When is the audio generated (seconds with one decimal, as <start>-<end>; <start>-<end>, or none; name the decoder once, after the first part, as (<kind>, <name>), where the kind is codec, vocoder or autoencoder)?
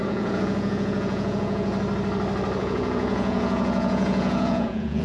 0.0-1.7 (vocoder, Vocos); 2.6-5.0